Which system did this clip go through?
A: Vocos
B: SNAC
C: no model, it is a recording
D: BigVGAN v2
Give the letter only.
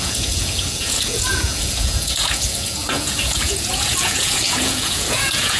A